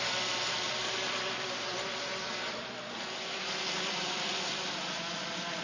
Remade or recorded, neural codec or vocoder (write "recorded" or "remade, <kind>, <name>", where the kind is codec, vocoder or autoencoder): remade, vocoder, BigVGAN v2